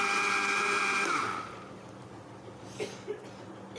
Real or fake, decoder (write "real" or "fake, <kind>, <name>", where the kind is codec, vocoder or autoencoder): real